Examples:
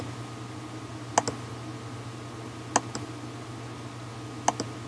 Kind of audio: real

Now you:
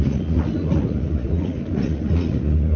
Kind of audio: fake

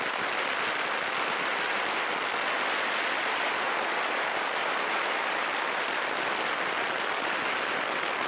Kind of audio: real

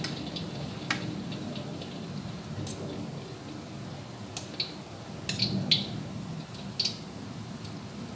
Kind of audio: real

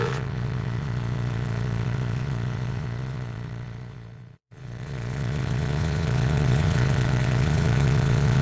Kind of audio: fake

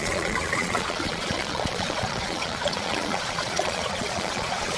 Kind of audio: fake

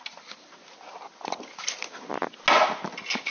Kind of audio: real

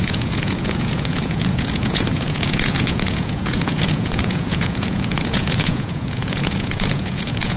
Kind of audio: fake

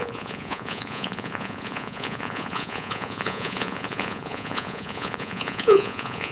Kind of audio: fake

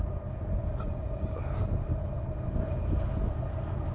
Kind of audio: real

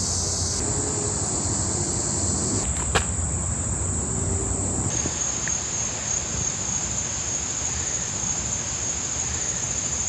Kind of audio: real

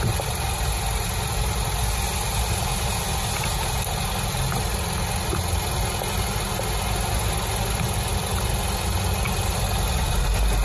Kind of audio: real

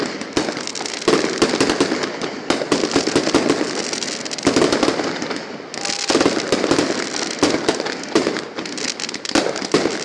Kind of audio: real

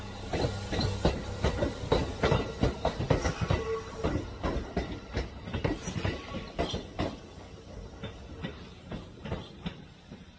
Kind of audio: real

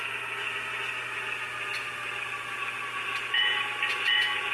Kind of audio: real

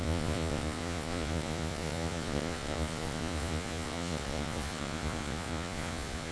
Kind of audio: fake